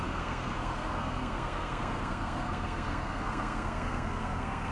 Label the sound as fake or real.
fake